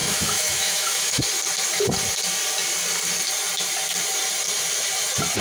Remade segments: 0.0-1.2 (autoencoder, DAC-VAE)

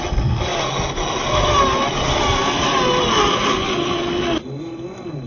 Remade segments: none

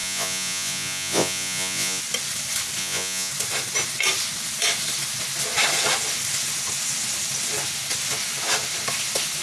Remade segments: 0.0-2.0 (vocoder, Vocos); 2.8-3.3

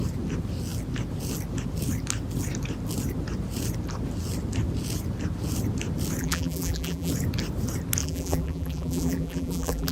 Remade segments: 6.2-7.1 (vocoder, BigVGAN v2); 8.0-9.9

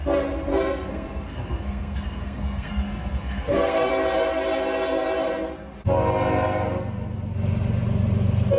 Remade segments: 0.5-3.9 (codec, SNAC)

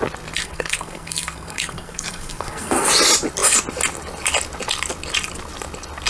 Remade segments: 0.4-2.9 (codec, SNAC)

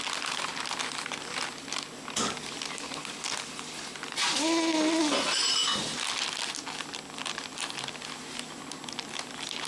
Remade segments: none